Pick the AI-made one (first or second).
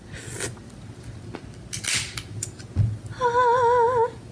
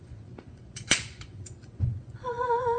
second